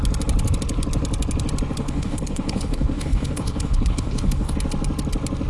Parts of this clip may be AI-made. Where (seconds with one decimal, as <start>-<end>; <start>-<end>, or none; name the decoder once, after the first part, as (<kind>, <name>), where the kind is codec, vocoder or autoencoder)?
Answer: 1.8-4.5 (codec, HILCodec)